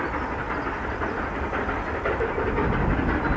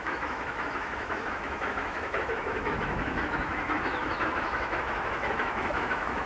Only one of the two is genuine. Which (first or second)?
first